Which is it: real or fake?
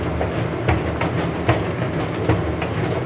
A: real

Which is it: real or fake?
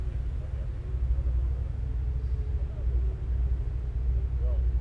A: real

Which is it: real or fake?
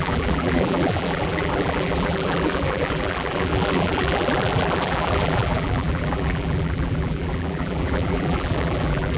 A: fake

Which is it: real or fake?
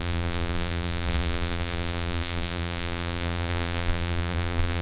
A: fake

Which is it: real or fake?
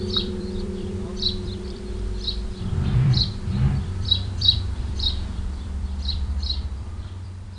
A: fake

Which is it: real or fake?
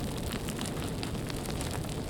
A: real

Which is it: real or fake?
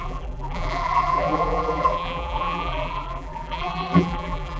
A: fake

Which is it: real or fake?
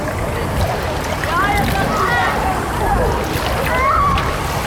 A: real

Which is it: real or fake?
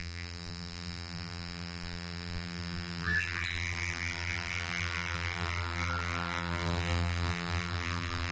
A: fake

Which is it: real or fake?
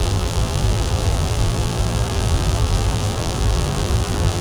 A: fake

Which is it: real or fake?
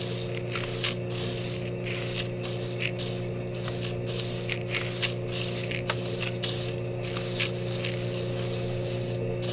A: real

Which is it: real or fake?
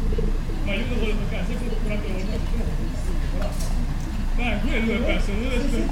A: real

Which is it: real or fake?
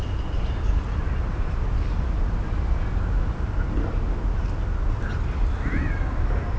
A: real